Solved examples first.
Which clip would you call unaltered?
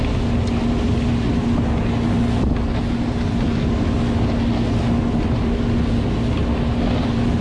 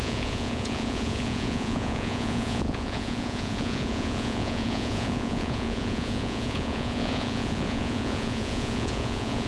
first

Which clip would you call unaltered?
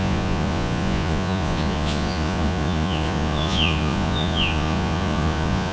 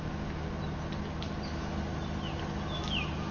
second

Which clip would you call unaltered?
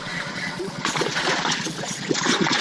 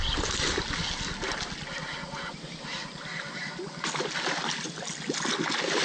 second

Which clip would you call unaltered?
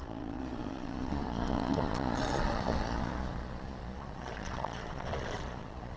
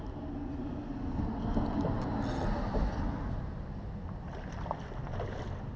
second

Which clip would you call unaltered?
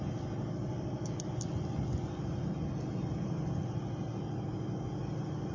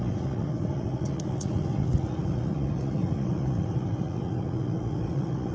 first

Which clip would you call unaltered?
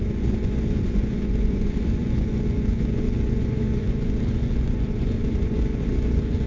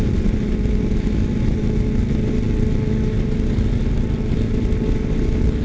second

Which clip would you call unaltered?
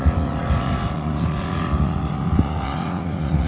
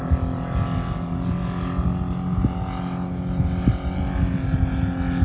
second